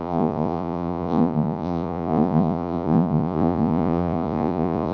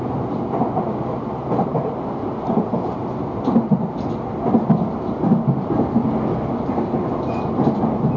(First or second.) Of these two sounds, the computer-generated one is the first